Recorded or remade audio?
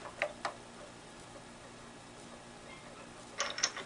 recorded